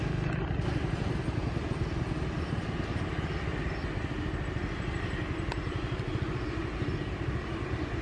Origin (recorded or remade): recorded